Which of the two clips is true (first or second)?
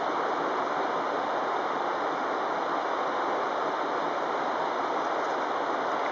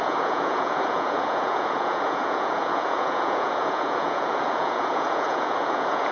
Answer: first